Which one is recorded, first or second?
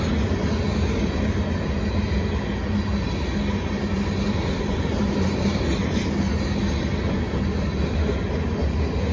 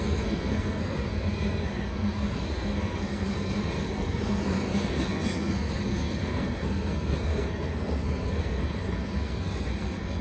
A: first